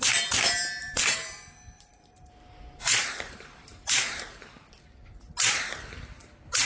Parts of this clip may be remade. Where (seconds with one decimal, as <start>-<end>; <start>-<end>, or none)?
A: 0.8-2.3; 2.8-4.8